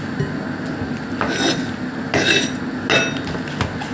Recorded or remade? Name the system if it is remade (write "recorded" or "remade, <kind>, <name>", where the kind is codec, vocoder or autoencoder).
recorded